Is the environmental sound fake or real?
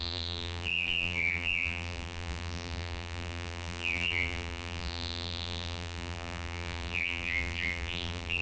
fake